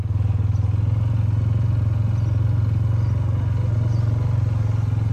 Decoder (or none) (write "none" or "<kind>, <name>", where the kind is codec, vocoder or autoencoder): none